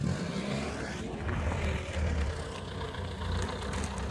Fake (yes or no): no